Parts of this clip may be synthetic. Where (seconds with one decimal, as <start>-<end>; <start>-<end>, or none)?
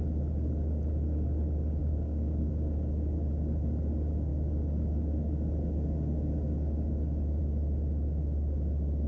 1.8-2.5